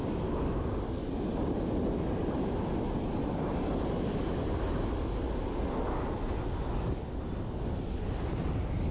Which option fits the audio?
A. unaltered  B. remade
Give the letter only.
A